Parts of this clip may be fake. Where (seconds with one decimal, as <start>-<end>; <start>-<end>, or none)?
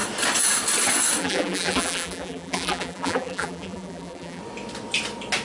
1.2-4.4